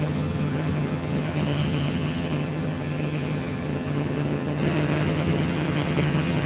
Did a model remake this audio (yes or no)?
yes